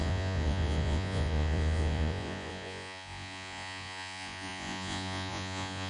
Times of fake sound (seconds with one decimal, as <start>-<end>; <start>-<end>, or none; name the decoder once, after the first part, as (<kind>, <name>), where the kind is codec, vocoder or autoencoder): 0.0-5.9 (vocoder, Vocos)